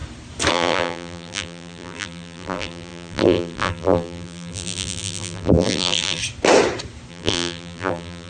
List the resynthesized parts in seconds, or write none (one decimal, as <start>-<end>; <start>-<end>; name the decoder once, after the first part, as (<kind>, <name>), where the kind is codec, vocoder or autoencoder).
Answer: 0.5-6.2 (vocoder, BigVGAN v2); 7.1-8.3